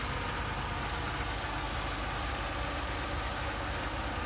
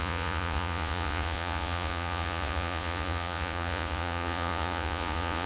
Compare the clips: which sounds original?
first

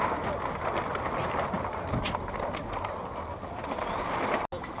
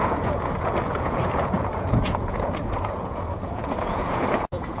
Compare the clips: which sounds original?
first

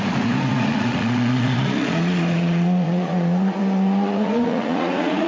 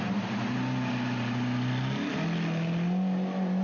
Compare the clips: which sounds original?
second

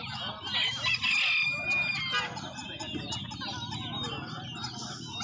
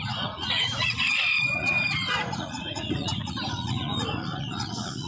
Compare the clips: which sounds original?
first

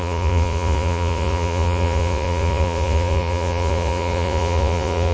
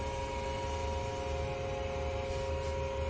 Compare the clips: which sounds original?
second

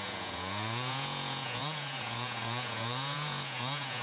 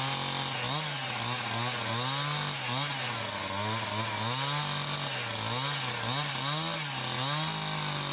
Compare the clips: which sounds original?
second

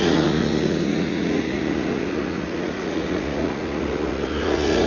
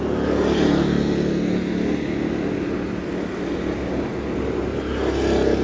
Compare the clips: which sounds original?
second